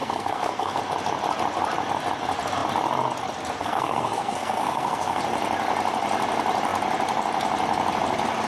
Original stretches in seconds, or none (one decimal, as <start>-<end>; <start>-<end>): 0.8-3.6; 5.2-8.5